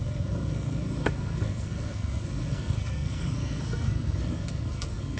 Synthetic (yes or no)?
yes